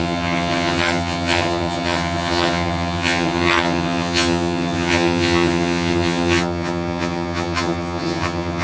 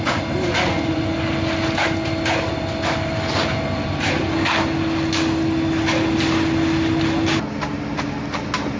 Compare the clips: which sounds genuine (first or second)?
second